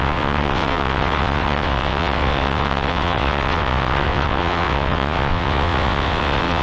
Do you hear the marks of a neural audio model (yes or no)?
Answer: yes